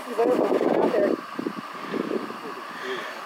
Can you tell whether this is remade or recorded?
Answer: recorded